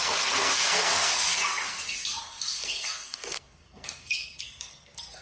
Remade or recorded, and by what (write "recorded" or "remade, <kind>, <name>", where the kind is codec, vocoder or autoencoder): remade, codec, SNAC